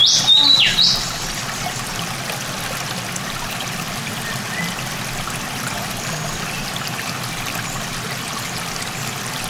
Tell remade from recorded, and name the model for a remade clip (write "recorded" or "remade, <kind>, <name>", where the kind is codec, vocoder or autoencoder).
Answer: recorded